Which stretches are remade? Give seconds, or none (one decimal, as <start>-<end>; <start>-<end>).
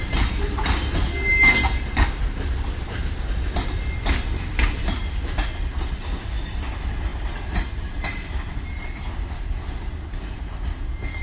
none